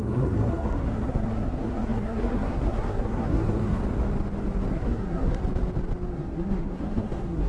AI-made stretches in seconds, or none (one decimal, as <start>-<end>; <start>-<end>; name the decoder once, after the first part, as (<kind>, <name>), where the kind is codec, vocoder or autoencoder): 0.0-3.8 (codec, SNAC); 4.7-5.4; 6.1-7.5